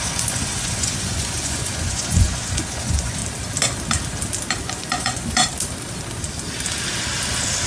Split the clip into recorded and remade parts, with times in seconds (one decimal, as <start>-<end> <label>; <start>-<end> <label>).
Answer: 0.0-3.2 remade; 3.2-4.6 recorded; 4.6-5.4 remade; 5.4-7.7 recorded